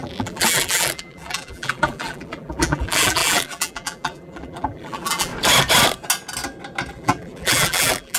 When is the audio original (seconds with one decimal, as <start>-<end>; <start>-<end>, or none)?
5.3-6.9